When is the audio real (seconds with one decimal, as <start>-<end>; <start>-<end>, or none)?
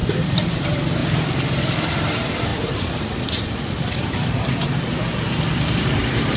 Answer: 0.5-2.5